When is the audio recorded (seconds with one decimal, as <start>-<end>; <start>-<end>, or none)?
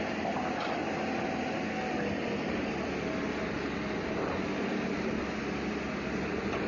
0.0-6.7